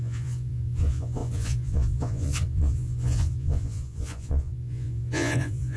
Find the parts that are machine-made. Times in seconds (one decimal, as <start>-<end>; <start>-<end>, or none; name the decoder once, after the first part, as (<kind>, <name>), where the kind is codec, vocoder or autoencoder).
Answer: 0.0-5.8 (vocoder, Vocos)